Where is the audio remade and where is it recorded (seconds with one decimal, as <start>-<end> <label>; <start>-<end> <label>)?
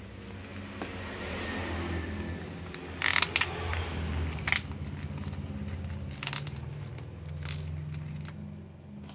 0.0-9.1 recorded